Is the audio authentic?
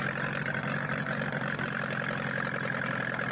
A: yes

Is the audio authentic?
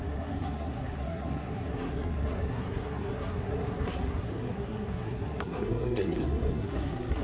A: no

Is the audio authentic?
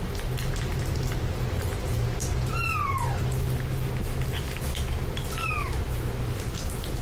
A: yes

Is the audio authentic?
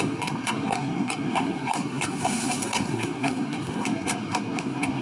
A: no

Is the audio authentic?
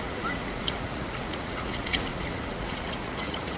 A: no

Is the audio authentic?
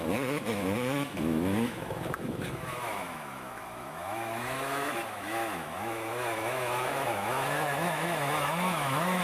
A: no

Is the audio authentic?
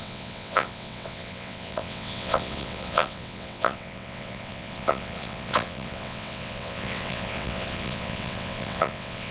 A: no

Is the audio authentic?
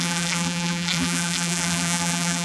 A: no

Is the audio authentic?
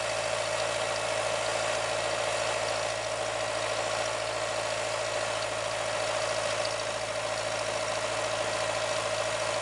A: yes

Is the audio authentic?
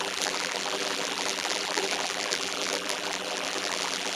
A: no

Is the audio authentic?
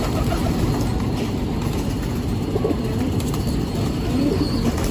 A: yes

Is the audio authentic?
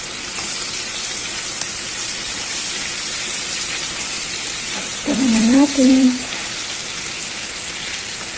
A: no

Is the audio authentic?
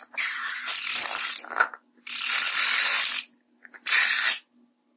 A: yes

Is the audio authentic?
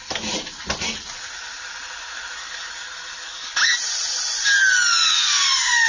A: yes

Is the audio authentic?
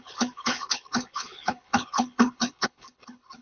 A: no